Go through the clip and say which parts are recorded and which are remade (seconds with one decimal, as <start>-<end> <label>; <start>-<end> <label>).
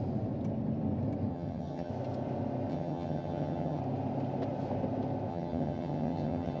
0.0-1.3 recorded; 1.3-1.9 remade; 1.9-2.7 recorded; 2.7-3.8 remade; 3.8-5.3 recorded; 5.3-6.6 remade